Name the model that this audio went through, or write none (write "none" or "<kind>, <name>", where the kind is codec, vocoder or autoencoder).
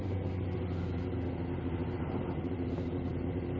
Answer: none